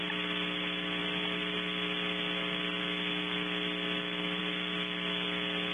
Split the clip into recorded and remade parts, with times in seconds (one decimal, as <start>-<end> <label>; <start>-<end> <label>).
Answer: 0.0-5.7 recorded